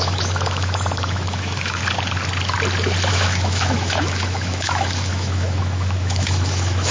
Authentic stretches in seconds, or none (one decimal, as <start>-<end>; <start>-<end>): 1.8-3.1